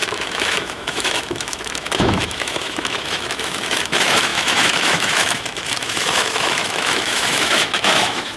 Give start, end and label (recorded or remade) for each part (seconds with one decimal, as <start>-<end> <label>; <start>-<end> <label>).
0.0-8.4 remade